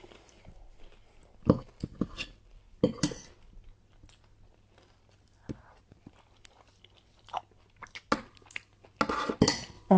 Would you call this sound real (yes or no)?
yes